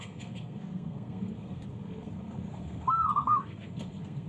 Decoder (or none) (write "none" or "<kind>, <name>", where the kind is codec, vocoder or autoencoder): codec, SNAC